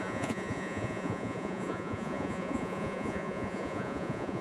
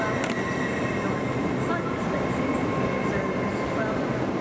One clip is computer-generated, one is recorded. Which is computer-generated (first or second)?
first